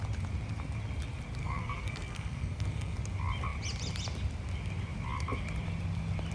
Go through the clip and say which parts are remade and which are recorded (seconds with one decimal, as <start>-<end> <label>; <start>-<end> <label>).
0.0-1.4 recorded; 1.4-3.0 remade; 3.0-6.3 recorded